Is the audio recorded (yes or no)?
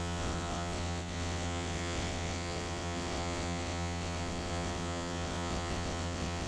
no